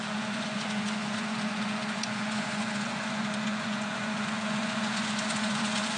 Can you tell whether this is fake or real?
fake